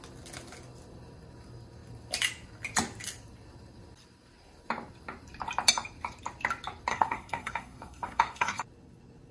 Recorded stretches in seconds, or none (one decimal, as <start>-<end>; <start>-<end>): 0.0-6.9; 8.6-9.3